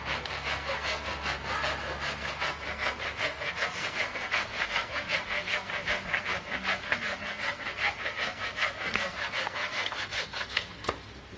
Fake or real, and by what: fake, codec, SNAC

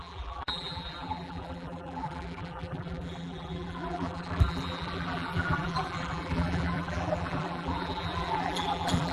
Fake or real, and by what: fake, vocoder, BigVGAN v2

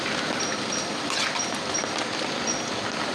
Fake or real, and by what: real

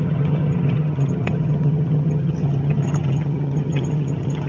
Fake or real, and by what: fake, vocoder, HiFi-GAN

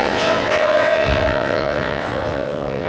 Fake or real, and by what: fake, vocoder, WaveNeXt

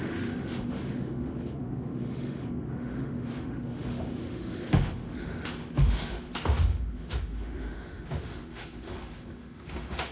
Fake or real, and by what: fake, autoencoder, DAC-VAE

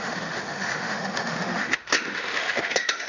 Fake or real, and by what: fake, autoencoder, DAC-VAE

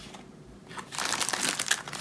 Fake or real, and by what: real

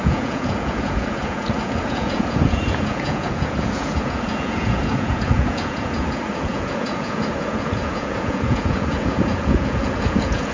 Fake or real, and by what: fake, vocoder, Vocos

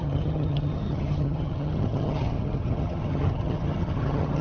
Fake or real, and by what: fake, vocoder, HiFi-GAN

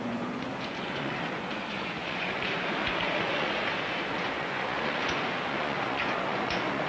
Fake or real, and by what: fake, vocoder, Vocos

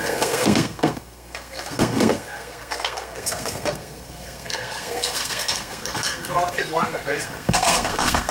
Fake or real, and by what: fake, codec, SNAC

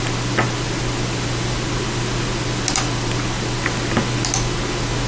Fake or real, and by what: real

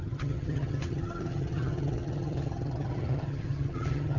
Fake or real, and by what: fake, vocoder, HiFi-GAN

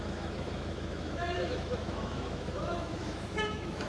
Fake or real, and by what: fake, autoencoder, DAC-VAE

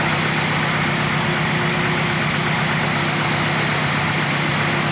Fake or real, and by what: real